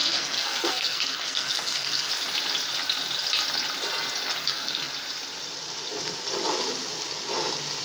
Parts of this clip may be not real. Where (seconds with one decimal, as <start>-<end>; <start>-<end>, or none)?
0.0-2.1; 4.4-4.9